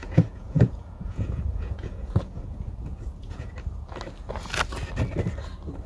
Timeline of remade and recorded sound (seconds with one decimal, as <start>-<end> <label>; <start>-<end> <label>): 0.0-3.5 remade; 3.5-5.9 recorded